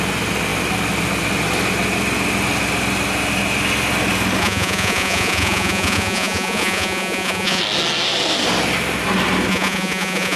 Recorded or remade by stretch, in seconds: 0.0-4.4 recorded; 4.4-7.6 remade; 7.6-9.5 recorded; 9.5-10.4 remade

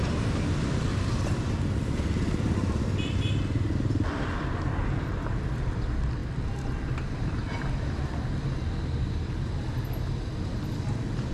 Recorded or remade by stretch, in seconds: 0.0-11.3 recorded

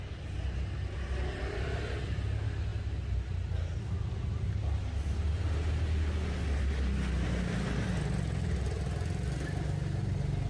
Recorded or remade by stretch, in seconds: 0.0-10.5 recorded

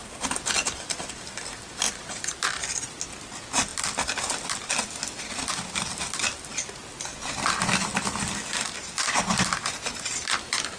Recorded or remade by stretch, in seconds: 0.0-10.8 recorded

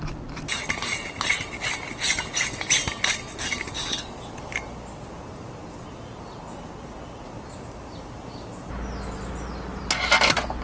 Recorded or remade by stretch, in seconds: 0.0-10.6 recorded

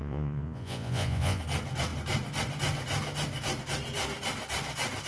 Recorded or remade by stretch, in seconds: 0.0-1.4 remade; 1.4-5.1 recorded